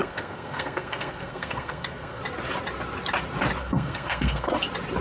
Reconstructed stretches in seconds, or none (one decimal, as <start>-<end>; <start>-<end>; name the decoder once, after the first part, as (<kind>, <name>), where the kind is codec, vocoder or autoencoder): 0.0-2.2 (codec, SNAC); 3.6-4.5